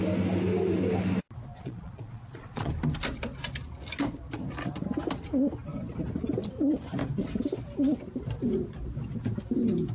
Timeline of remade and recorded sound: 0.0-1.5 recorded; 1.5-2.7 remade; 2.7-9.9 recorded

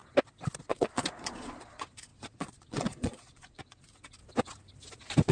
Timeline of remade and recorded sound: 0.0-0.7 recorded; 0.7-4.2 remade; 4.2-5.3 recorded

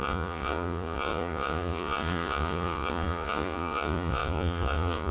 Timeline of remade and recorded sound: 0.0-5.1 remade